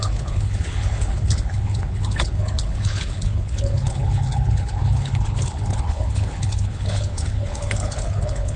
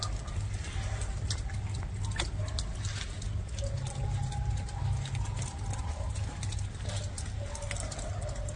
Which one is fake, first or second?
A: first